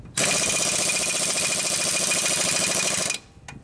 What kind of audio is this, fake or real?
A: real